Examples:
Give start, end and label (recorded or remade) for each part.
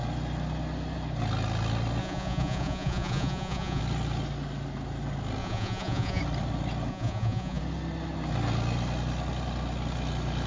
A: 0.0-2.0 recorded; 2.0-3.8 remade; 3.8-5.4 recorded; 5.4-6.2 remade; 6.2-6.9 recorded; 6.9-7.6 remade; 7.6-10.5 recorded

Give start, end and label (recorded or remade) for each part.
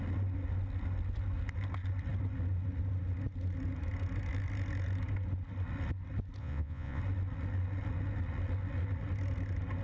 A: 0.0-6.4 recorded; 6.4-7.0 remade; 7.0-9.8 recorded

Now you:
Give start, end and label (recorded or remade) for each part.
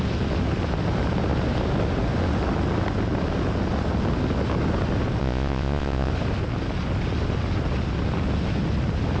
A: 0.0-5.2 recorded; 5.2-6.1 remade; 6.1-9.2 recorded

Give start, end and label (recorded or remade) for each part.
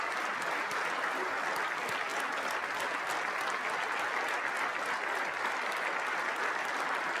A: 0.0-7.2 recorded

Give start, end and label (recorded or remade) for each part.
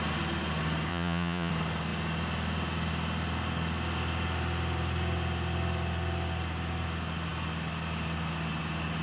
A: 0.0-0.9 recorded; 0.9-1.5 remade; 1.5-9.0 recorded